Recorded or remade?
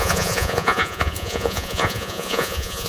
remade